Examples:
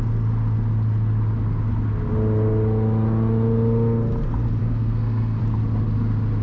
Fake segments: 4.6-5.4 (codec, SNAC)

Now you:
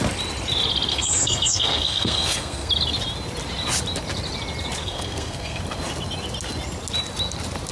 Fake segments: 0.9-2.7 (codec, SNAC); 4.8-5.6

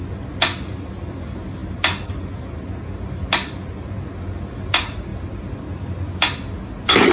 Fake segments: none

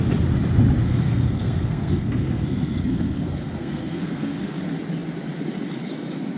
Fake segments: 0.8-4.6 (codec, SNAC)

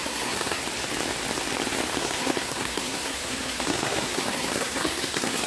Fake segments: 0.0-0.6 (codec, SNAC); 2.0-5.5

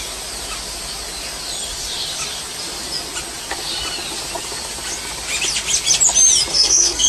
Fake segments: 6.5-7.1 (codec, SNAC)

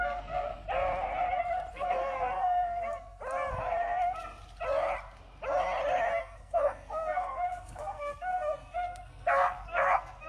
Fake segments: 0.0-0.5 (codec, SNAC); 1.7-3.2; 6.2-10.3